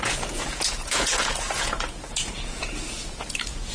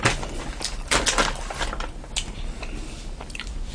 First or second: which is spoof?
first